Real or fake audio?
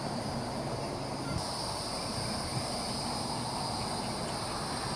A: real